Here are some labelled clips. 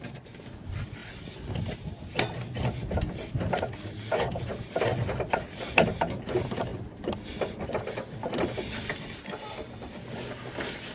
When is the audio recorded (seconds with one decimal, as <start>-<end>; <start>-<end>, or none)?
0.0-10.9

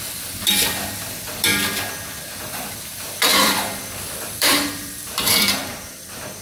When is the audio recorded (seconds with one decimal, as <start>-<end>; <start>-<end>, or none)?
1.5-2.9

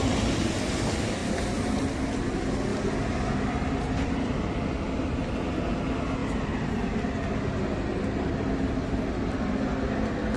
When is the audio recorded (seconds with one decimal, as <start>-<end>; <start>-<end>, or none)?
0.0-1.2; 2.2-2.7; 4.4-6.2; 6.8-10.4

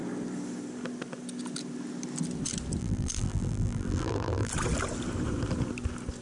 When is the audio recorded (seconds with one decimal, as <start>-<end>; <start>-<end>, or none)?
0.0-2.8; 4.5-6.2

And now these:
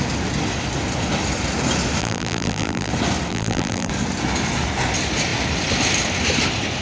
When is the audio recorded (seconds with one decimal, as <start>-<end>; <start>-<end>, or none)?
0.0-2.0; 2.9-3.3; 3.9-6.8